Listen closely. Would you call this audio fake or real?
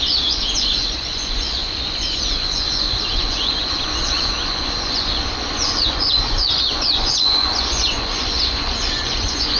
fake